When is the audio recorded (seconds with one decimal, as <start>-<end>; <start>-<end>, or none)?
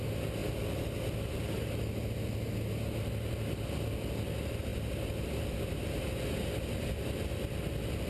0.0-8.1